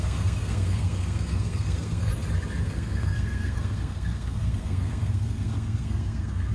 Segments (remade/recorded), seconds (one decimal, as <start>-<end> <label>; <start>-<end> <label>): 0.0-2.1 remade; 2.1-2.6 recorded; 2.6-6.5 remade